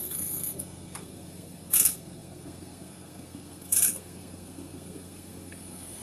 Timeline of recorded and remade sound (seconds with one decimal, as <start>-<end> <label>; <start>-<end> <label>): 0.0-6.0 remade